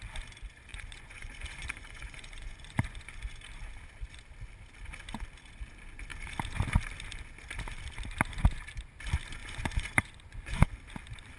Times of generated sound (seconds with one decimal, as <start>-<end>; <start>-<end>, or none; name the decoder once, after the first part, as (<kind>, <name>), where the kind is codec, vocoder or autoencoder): 0.7-3.3 (vocoder, Vocos); 9.4-10.7